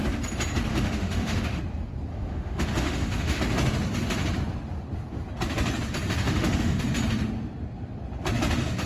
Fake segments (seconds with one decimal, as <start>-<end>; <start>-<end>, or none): 0.7-1.6; 2.1-3.4; 6.2-6.8